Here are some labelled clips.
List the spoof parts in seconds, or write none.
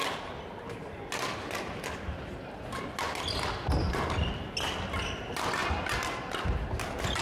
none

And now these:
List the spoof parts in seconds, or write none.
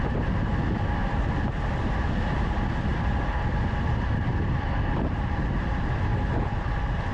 none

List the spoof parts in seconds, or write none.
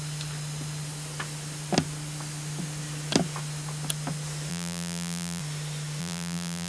4.5-5.4 (vocoder, BigVGAN v2); 6.0-6.7